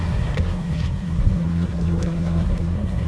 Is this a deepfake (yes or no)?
yes